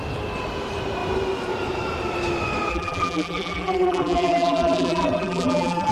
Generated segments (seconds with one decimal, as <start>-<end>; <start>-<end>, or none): 2.7-5.9